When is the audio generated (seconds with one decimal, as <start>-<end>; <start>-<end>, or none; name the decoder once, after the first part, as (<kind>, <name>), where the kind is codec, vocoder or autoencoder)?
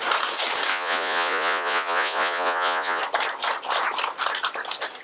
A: 0.7-3.0 (vocoder, Vocos)